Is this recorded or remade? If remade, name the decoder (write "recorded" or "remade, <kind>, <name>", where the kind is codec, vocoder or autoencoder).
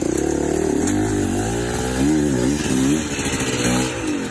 recorded